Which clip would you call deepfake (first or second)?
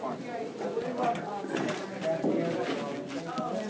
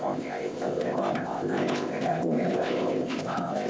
second